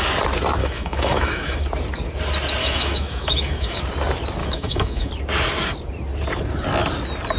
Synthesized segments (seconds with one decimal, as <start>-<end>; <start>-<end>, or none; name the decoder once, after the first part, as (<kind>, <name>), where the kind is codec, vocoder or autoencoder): 0.6-1.6 (autoencoder, DAC-VAE); 2.6-3.8; 4.4-5.1